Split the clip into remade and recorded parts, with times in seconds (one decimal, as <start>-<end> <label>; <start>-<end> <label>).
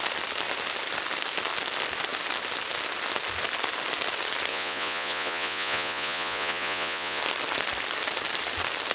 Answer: 0.0-4.5 recorded; 4.5-7.2 remade; 7.2-8.9 recorded